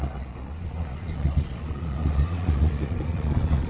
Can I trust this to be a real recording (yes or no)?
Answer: no